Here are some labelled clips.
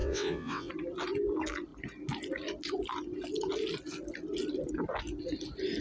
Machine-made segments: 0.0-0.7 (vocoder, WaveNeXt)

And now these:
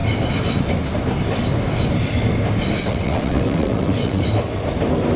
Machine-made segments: 2.8-4.2 (vocoder, WaveNeXt)

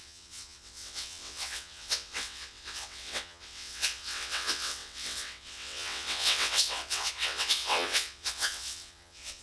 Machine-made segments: 0.0-9.4 (vocoder, WaveNeXt)

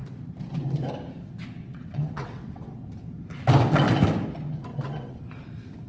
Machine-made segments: 1.6-2.8 (vocoder, WaveNeXt); 4.7-5.2